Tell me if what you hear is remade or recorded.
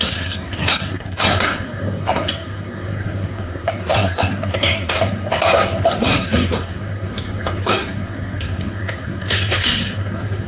remade